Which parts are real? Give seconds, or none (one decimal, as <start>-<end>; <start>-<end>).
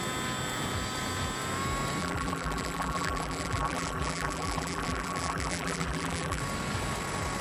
0.0-2.0; 6.4-7.4